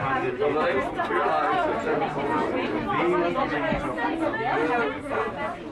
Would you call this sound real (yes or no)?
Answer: yes